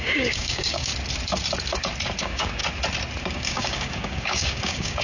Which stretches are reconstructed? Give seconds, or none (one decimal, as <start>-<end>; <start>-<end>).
0.0-0.9; 2.2-2.6; 3.2-5.0